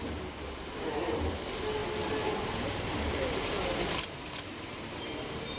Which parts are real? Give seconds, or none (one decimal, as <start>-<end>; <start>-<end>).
0.0-5.6